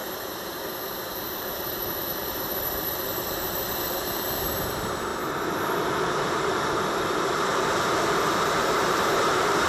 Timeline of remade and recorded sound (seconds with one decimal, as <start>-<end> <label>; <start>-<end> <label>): 0.0-5.1 remade; 5.1-6.1 recorded; 6.1-9.7 remade

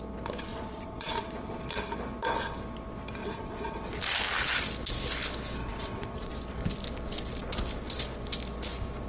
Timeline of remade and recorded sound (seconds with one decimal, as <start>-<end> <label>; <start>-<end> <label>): 0.0-0.5 recorded; 0.5-1.6 remade; 1.6-3.2 recorded; 3.2-4.0 remade; 4.0-5.6 recorded; 5.6-6.3 remade; 6.3-9.1 recorded

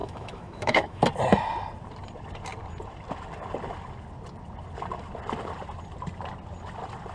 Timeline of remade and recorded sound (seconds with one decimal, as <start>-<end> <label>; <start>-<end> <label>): 0.0-1.0 remade; 1.0-7.1 recorded

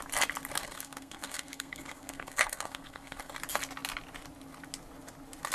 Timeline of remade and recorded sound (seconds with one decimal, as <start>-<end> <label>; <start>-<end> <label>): 0.0-0.6 recorded; 0.6-3.3 remade; 3.3-5.5 recorded